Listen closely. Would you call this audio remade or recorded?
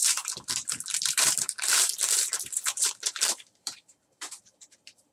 remade